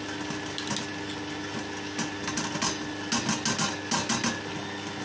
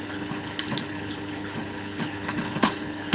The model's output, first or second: second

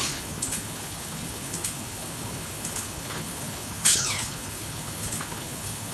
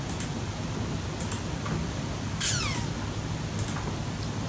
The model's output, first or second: first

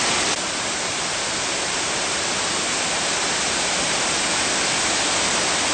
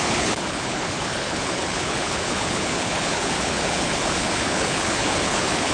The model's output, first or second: second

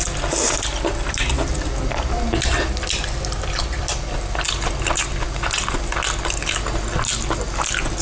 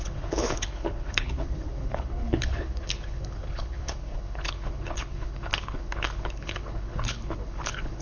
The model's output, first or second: second